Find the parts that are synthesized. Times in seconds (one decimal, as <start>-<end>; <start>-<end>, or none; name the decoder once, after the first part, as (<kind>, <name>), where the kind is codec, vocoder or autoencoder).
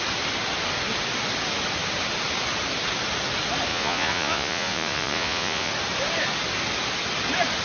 3.7-5.7 (vocoder, Vocos)